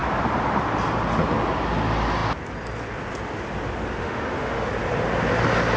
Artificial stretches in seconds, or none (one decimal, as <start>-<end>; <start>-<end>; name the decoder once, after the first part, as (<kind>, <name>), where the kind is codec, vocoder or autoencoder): 4.0-4.7 (autoencoder, DAC-VAE)